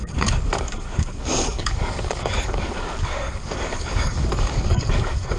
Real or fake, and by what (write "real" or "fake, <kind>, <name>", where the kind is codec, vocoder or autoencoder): fake, codec, DAC